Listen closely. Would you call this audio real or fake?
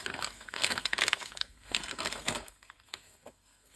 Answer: fake